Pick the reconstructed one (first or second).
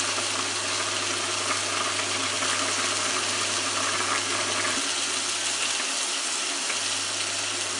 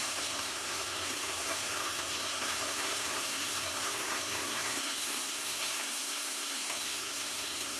second